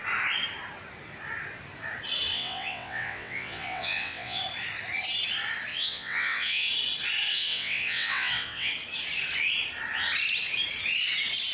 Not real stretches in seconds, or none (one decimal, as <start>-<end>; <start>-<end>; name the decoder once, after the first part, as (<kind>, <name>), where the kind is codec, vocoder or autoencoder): 2.3-4.4 (vocoder, WaveNeXt); 5.7-6.7; 7.3-8.7